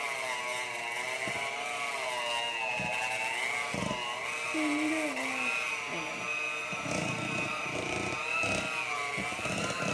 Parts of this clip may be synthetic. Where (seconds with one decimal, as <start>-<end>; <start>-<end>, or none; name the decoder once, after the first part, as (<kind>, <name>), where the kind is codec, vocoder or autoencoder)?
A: 6.6-8.1 (vocoder, BigVGAN v2)